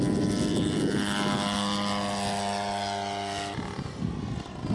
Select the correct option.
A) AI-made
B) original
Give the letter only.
B